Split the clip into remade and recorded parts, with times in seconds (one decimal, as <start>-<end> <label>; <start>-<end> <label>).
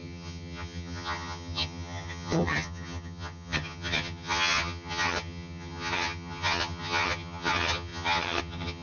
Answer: 0.0-8.8 remade